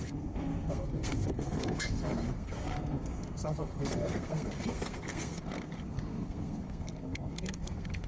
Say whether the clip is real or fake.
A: fake